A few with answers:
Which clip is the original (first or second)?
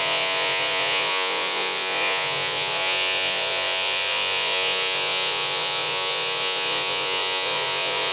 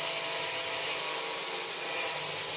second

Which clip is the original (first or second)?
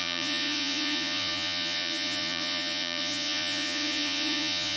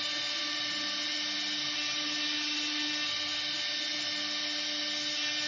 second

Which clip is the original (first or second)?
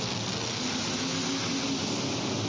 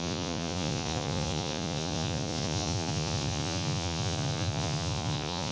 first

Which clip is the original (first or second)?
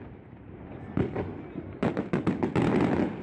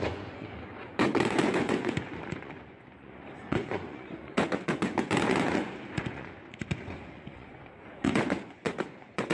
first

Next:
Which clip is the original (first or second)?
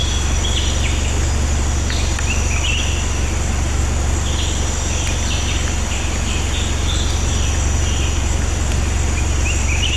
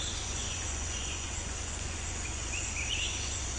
first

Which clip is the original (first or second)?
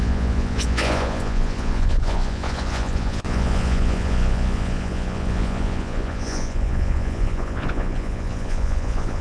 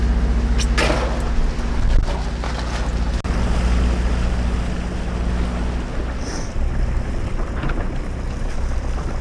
second